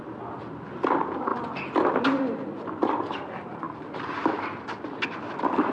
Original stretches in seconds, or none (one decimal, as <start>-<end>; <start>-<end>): 0.0-2.8; 4.3-5.7